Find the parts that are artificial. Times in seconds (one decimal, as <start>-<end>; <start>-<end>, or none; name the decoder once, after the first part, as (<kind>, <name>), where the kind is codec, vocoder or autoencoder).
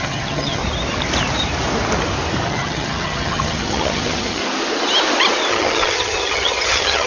0.0-0.6 (vocoder, HiFi-GAN); 2.5-4.4; 5.5-7.1